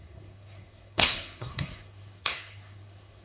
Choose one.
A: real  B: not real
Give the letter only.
B